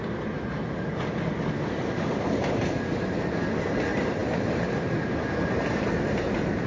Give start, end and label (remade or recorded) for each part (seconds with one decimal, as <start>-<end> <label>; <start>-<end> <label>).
0.0-6.7 recorded